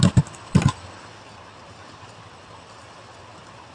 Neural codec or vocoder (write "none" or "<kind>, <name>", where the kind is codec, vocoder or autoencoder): none